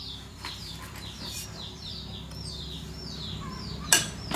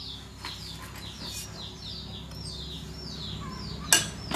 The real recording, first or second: second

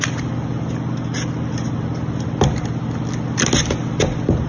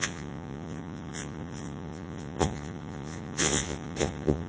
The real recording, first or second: first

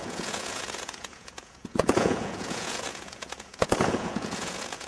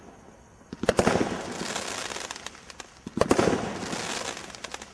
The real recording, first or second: second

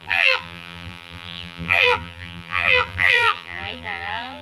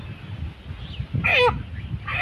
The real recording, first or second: second